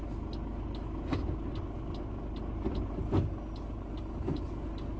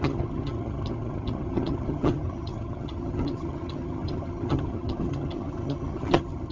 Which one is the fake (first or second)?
second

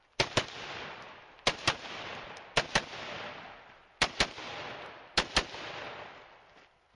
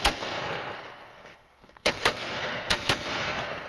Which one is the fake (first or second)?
second